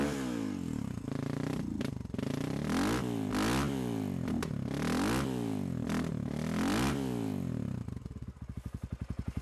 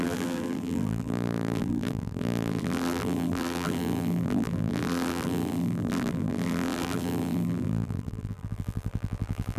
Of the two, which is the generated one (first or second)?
second